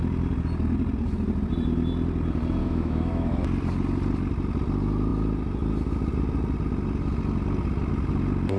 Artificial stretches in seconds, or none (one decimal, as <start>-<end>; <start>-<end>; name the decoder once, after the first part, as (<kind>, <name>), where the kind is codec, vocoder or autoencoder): 2.6-3.4 (autoencoder, DAC-VAE)